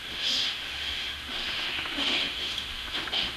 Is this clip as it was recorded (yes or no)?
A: no